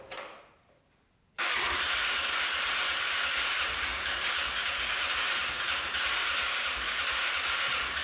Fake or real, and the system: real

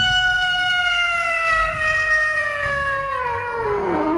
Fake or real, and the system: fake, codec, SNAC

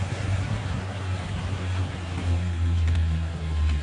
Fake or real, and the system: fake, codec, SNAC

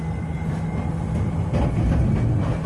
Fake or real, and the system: real